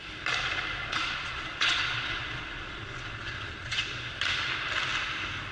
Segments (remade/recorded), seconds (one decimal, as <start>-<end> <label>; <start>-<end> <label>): 0.0-0.8 recorded; 0.8-4.1 remade; 4.1-5.5 recorded